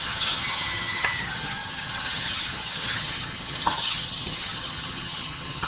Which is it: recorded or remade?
remade